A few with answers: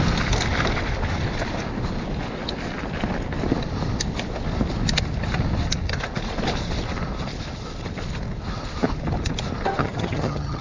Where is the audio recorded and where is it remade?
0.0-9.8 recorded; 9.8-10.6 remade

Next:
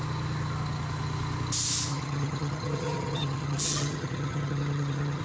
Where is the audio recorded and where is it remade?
0.0-1.9 recorded; 1.9-5.2 remade

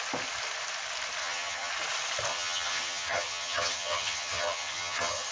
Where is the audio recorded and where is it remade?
0.0-1.2 recorded; 1.2-1.7 remade; 1.7-2.3 recorded; 2.3-5.3 remade